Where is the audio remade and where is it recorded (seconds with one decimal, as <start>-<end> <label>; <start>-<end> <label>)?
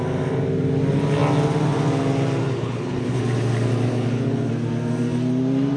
0.0-2.4 recorded; 2.4-3.2 remade; 3.2-3.9 recorded; 3.9-4.5 remade; 4.5-5.8 recorded